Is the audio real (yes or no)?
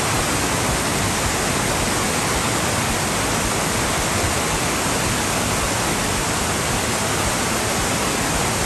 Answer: yes